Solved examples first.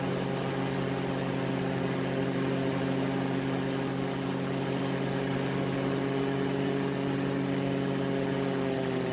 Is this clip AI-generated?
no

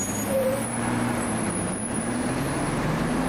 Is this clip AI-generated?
yes